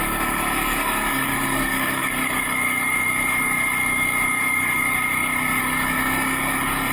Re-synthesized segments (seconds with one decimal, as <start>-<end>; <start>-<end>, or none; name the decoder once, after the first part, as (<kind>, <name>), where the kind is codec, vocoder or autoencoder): 0.0-6.9 (codec, DAC)